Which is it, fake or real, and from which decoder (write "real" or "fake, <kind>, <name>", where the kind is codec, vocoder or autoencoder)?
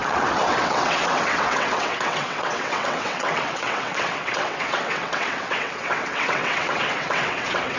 fake, vocoder, WaveNeXt